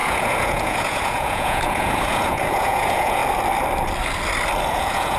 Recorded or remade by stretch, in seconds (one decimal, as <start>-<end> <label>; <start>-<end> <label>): 0.0-3.2 remade; 3.2-4.7 recorded; 4.7-5.2 remade